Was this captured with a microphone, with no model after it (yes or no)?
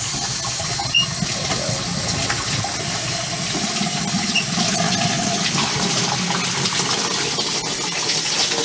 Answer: yes